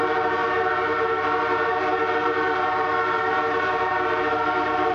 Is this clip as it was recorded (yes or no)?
no